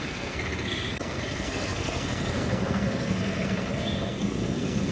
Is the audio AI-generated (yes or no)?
yes